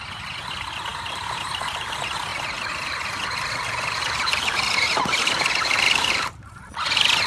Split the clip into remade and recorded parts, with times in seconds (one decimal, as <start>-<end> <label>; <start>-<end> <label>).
0.0-0.9 recorded; 0.9-1.9 remade; 1.9-2.3 recorded; 2.3-6.7 remade; 6.7-7.3 recorded